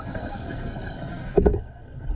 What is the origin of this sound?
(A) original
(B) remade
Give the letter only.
B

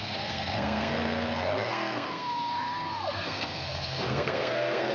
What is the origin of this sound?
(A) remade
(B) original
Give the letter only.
A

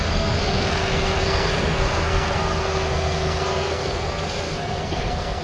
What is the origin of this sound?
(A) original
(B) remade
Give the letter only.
B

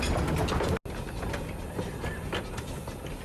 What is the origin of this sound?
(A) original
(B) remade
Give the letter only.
A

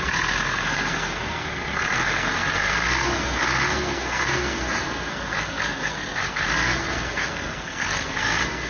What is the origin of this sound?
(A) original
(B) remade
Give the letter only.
B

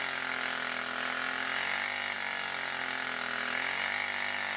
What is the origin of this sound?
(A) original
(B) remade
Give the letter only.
A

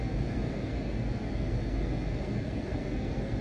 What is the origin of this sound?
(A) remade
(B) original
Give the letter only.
A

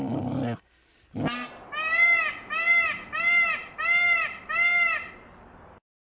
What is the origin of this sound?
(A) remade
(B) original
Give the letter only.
B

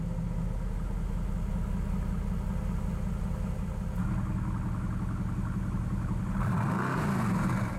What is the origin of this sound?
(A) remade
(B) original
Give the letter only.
B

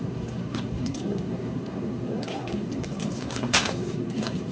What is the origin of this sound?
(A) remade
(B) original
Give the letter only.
A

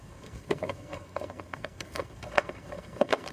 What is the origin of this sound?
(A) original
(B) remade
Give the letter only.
B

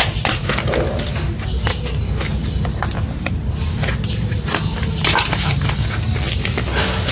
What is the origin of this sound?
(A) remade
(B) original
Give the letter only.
B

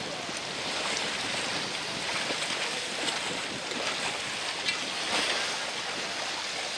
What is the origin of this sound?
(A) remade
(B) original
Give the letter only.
B